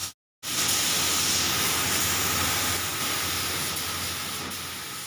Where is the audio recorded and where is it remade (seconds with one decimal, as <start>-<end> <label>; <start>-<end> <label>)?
0.0-5.1 recorded